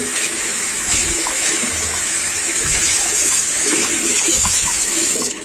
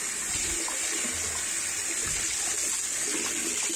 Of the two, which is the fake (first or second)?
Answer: first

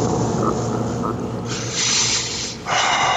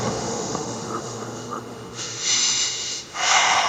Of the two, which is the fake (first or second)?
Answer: second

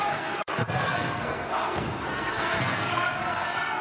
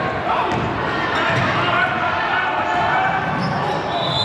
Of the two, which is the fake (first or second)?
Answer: first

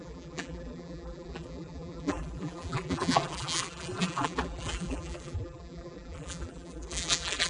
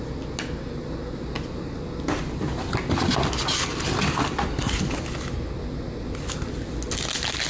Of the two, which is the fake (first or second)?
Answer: first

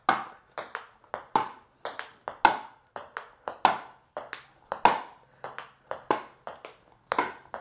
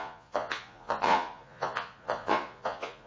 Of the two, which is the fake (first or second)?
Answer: second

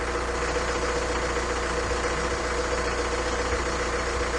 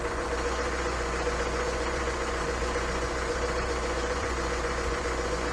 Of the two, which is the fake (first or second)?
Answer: second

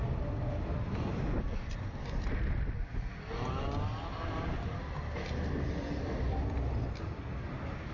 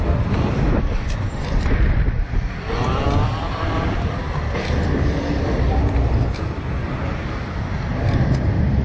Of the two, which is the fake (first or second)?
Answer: second